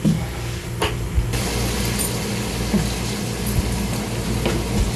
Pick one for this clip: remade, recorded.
recorded